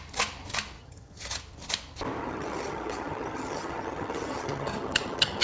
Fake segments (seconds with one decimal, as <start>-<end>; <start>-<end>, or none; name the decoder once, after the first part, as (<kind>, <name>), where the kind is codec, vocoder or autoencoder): 0.8-1.4 (vocoder, HiFi-GAN); 2.2-5.4